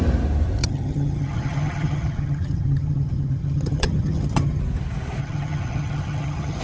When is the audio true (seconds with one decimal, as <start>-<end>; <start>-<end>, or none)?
0.0-0.6; 4.6-5.2